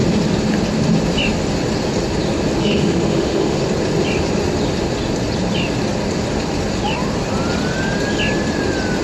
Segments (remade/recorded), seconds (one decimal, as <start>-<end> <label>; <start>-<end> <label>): 0.0-2.6 recorded; 2.6-3.6 remade; 3.6-9.0 recorded